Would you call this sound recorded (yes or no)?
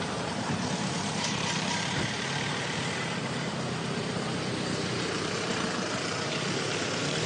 no